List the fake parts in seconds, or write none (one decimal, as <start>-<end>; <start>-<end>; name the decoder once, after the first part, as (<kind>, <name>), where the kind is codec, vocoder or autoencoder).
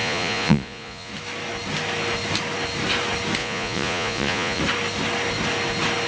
0.0-1.1 (vocoder, Vocos); 3.4-4.6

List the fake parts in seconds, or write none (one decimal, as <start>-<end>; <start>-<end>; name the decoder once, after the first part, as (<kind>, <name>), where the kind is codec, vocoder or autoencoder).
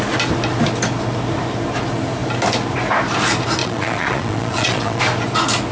3.6-5.0 (vocoder, Vocos)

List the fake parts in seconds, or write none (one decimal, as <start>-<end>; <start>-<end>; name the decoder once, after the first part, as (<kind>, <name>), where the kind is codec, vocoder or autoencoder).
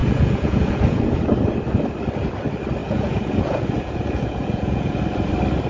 0.0-1.2 (vocoder, Vocos); 2.8-5.0